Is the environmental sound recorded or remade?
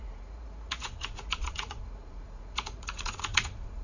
remade